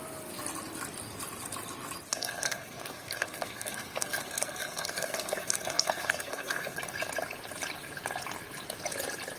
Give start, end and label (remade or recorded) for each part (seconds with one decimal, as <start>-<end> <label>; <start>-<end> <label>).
0.0-2.1 recorded; 2.1-6.8 remade; 6.8-9.4 recorded